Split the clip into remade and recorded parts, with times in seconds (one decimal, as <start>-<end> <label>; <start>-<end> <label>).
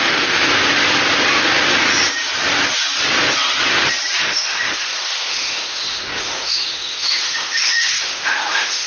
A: 0.0-0.4 remade; 0.4-4.2 recorded; 4.2-8.9 remade